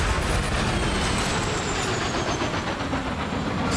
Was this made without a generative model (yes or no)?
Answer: yes